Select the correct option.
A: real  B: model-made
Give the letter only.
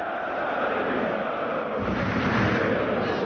A